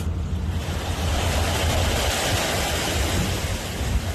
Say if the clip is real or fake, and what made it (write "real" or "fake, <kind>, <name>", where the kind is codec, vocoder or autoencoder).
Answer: real